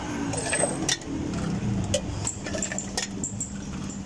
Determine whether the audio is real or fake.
real